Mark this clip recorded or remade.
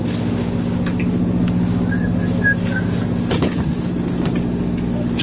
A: remade